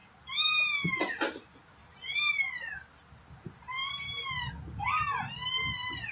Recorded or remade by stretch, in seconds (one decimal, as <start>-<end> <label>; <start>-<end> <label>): 0.0-1.8 recorded; 1.8-2.4 remade; 2.4-6.1 recorded